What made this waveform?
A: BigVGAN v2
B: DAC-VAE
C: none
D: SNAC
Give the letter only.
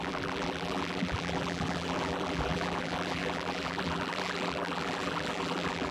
A